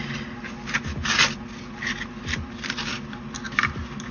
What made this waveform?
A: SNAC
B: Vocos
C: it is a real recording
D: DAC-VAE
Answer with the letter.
C